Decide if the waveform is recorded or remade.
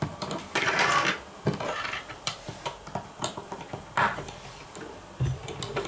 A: remade